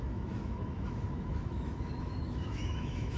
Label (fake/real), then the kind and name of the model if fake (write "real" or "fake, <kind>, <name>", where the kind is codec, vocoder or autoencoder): fake, autoencoder, DAC-VAE